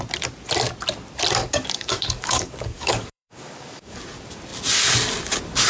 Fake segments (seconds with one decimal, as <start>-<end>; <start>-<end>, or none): 1.4-4.0